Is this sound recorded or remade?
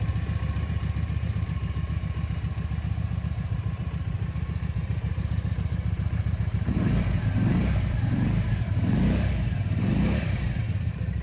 remade